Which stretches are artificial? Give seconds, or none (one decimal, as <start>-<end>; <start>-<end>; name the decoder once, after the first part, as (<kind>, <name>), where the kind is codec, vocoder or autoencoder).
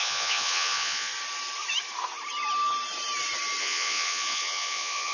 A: 0.0-1.1 (vocoder, Vocos); 3.6-5.1